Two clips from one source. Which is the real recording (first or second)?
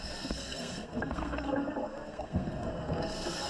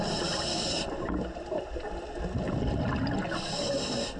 second